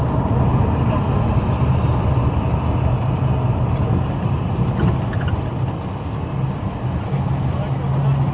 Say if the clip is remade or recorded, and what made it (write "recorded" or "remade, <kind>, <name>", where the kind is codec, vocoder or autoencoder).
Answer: recorded